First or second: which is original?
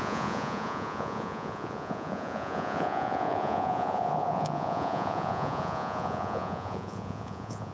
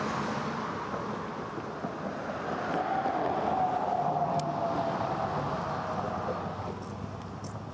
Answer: second